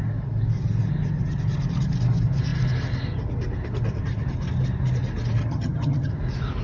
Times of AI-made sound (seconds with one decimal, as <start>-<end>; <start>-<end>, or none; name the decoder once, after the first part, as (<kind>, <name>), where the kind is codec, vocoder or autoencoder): 5.4-6.1 (vocoder, HiFi-GAN)